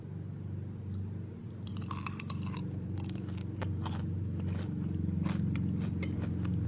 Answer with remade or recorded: recorded